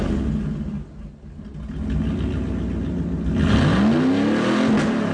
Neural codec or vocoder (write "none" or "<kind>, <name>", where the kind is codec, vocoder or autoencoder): none